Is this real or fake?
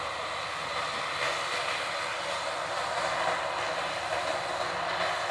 real